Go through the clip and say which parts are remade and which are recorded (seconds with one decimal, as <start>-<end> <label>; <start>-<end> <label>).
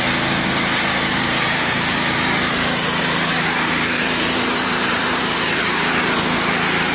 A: 0.0-1.1 recorded; 1.1-5.2 remade; 5.2-6.9 recorded